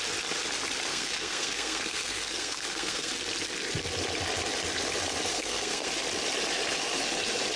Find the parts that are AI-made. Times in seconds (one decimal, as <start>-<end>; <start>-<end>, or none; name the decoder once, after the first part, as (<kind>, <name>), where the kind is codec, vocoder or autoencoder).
0.9-3.1 (codec, SNAC); 5.3-5.9